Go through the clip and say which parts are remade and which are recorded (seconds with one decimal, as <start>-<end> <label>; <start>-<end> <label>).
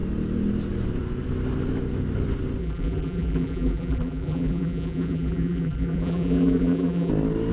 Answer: 0.0-2.6 recorded; 2.6-7.1 remade; 7.1-7.5 recorded